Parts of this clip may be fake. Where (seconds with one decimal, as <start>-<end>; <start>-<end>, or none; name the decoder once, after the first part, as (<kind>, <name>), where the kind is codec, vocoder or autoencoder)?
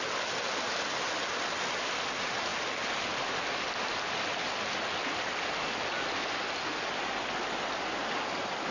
none